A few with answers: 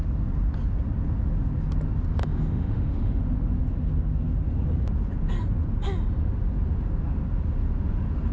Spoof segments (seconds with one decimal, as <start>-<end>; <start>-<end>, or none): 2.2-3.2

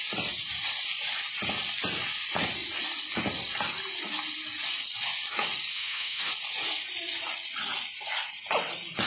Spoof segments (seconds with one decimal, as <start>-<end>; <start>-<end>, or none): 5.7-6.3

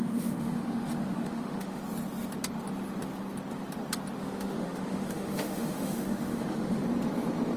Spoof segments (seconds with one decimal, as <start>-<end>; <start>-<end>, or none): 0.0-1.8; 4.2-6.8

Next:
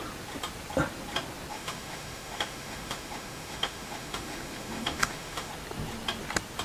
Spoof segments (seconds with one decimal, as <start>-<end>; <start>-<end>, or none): 1.5-5.5

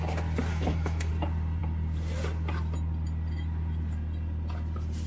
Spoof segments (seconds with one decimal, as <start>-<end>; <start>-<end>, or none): 0.5-1.1

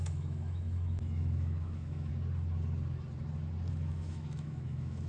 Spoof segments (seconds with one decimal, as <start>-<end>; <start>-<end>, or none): 0.0-2.1; 3.7-5.1

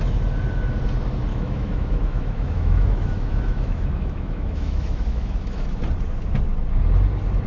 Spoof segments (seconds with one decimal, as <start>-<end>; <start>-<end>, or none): 1.3-5.8